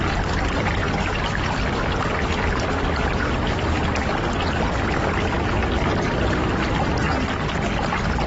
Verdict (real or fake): real